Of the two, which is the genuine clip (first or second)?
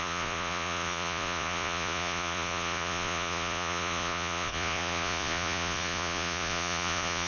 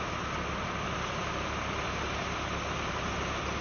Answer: second